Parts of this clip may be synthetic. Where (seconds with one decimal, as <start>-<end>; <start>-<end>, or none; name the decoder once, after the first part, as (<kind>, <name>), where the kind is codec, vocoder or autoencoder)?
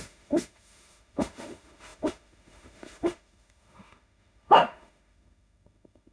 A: 0.0-6.1 (autoencoder, DAC-VAE)